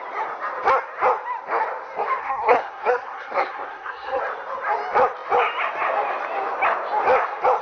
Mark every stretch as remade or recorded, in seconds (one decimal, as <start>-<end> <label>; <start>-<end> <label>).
0.0-2.2 recorded; 2.2-4.2 remade; 4.2-7.6 recorded